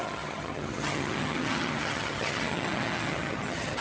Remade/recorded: remade